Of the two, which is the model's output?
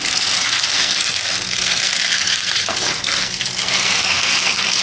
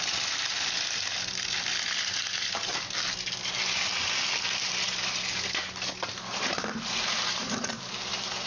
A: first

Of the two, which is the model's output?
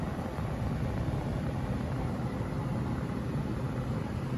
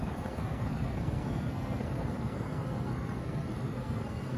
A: second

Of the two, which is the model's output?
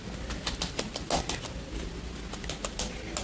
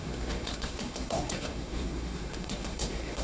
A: second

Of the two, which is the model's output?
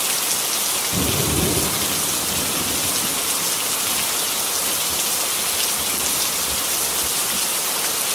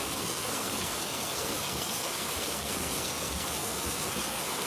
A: second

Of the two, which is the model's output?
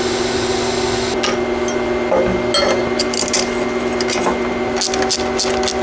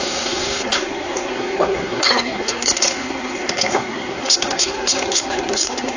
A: second